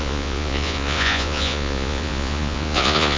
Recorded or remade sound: remade